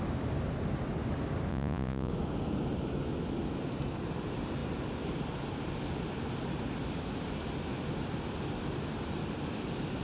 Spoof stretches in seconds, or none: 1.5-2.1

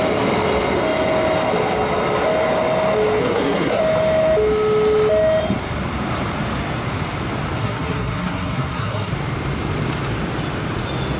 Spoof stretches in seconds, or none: 3.2-3.8; 7.6-9.1

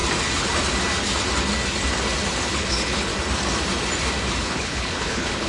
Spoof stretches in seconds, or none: 2.5-3.1; 4.4-5.5

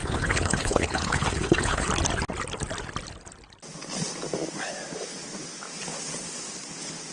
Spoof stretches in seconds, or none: 0.0-1.9

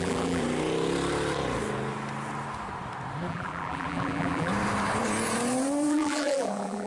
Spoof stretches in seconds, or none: 0.0-0.4; 3.3-4.5; 5.9-6.9